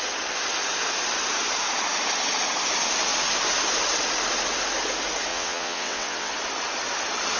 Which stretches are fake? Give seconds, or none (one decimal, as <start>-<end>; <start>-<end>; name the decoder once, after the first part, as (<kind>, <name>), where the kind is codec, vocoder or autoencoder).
5.3-6.3 (vocoder, WaveNeXt)